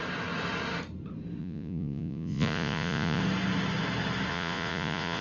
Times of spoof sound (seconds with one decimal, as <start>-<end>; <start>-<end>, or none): 1.4-3.2; 4.3-5.2